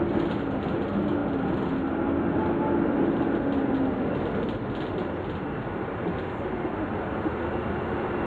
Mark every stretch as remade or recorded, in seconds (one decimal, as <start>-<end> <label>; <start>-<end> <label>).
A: 0.0-8.3 recorded